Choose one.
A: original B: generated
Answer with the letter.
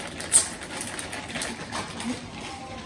A